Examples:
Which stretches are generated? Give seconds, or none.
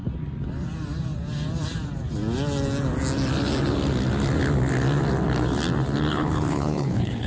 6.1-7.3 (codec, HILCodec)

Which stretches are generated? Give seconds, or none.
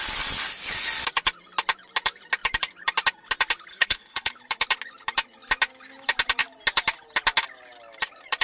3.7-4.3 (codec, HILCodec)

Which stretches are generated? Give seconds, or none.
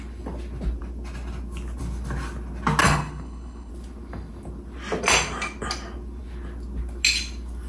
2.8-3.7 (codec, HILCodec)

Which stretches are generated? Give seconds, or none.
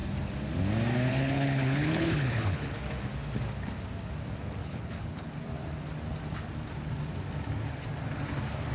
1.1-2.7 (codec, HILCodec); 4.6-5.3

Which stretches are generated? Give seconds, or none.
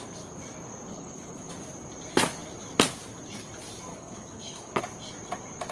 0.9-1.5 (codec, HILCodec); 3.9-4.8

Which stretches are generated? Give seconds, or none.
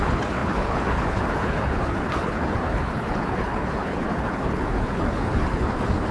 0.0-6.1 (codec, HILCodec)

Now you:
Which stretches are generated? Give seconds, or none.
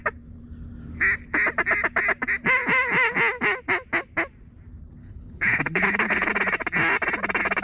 5.0-6.3 (codec, HILCodec)